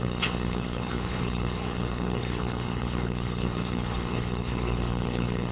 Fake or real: fake